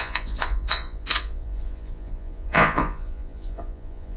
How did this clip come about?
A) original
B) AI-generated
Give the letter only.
B